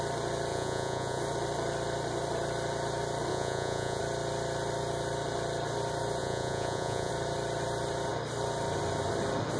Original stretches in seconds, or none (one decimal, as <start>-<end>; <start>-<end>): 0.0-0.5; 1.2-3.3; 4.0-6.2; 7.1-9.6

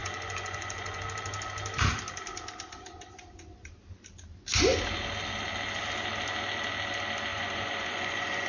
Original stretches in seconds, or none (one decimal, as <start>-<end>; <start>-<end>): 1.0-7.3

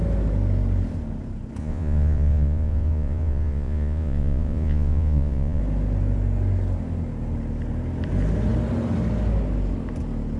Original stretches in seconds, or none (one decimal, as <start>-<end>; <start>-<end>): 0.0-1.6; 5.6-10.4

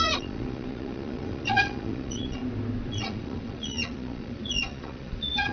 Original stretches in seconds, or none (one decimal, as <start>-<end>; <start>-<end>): 2.4-2.9

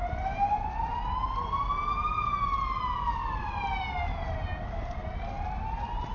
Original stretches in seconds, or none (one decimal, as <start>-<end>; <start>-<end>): 0.0-6.1

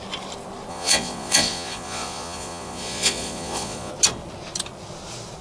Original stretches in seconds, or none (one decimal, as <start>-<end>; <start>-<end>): 0.0-0.7; 3.9-5.4